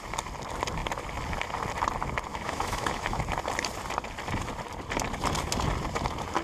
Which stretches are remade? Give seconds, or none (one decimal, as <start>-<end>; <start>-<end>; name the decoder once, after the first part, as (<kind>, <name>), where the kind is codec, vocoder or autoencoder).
2.3-3.2 (autoencoder, DAC-VAE)